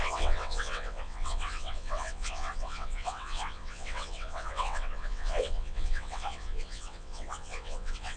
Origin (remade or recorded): remade